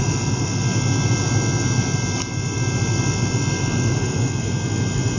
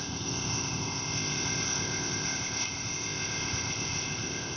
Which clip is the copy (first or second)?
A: second